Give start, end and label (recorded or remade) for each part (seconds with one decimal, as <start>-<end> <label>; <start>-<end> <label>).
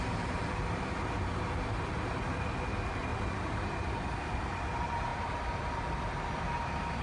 0.0-3.1 recorded; 3.1-4.6 remade; 4.6-5.1 recorded; 5.1-6.0 remade; 6.0-7.0 recorded